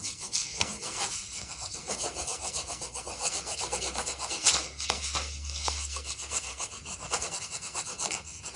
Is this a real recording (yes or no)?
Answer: no